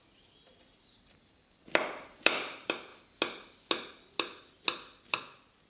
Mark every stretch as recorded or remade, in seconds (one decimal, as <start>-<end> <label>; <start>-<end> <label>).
0.0-2.9 remade; 2.9-5.0 recorded; 5.0-5.7 remade